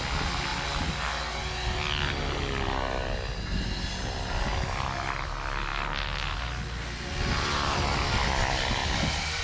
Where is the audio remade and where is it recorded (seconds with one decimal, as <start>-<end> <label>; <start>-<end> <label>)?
0.0-9.4 recorded